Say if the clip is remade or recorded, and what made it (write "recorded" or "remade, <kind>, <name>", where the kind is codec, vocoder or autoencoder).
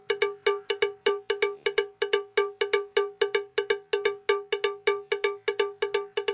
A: recorded